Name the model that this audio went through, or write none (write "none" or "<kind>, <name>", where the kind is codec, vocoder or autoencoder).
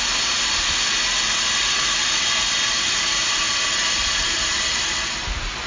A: none